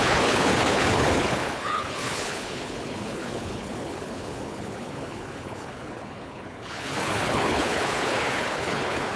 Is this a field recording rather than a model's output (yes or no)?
no